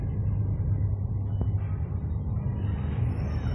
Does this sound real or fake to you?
real